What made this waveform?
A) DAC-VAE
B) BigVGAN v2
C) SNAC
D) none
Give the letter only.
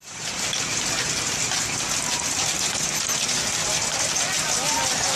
D